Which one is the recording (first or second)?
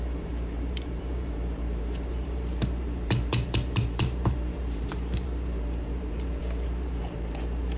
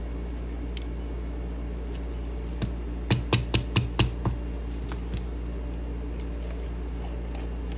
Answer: second